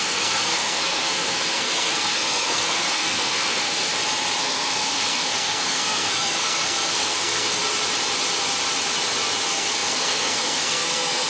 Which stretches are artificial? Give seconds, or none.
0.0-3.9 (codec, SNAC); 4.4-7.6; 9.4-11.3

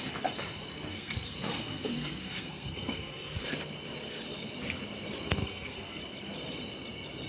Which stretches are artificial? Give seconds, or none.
0.9-3.5 (codec, SNAC); 5.4-6.0

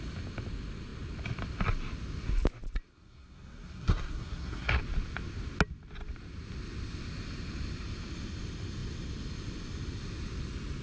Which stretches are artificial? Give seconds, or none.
2.9-4.8 (codec, SNAC)

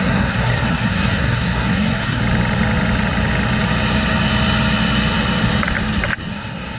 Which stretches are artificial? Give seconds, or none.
0.0-2.2 (codec, SNAC); 6.3-6.8

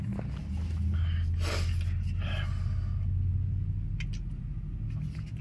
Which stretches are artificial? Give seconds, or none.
none

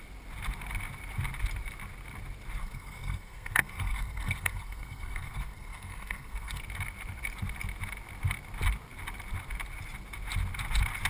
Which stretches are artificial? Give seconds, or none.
2.6-6.6 (codec, SNAC)